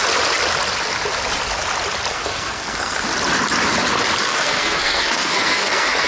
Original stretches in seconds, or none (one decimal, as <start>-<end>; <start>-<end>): 0.0-2.1; 3.1-4.2